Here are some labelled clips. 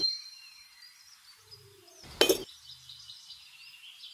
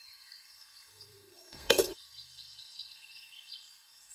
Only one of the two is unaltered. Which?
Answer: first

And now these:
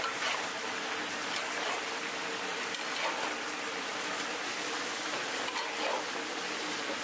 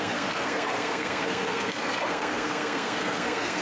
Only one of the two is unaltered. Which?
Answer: first